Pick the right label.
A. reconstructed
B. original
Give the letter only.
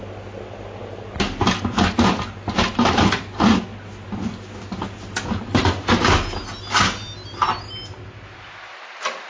B